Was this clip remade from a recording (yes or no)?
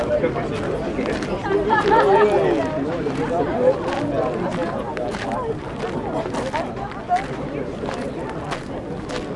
no